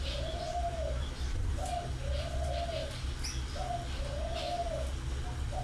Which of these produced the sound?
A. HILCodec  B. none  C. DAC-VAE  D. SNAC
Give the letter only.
B